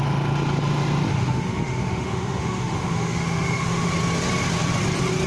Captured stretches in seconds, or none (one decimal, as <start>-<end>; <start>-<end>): 0.0-1.1; 3.9-5.3